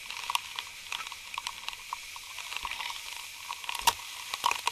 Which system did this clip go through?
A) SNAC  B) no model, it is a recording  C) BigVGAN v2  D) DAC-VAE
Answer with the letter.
B